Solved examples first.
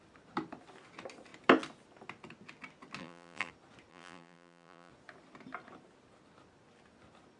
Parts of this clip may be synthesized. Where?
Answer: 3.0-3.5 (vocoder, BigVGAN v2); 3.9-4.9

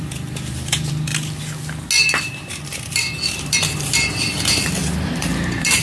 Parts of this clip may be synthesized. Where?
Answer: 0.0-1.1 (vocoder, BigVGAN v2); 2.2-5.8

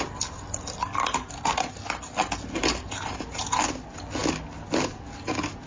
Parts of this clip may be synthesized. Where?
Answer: 2.6-3.4 (vocoder, BigVGAN v2)

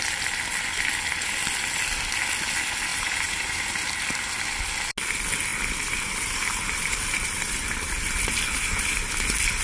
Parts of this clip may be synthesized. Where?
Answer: 2.9-4.2 (vocoder, BigVGAN v2); 5.5-9.1

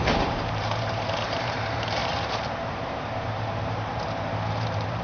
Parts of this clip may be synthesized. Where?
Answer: 0.0-5.0 (vocoder, BigVGAN v2)